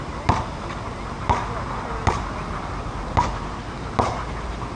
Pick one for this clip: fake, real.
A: real